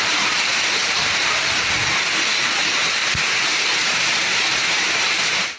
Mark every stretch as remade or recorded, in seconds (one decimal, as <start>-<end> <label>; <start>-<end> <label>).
0.0-1.8 remade; 1.8-2.6 recorded; 2.6-3.0 remade; 3.0-3.8 recorded; 3.8-5.6 remade